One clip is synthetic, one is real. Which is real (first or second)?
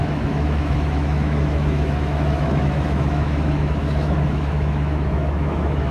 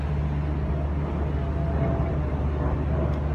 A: second